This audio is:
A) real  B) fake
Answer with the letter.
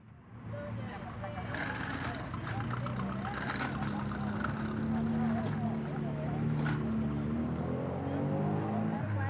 A